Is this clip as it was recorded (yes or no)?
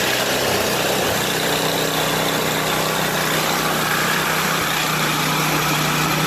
yes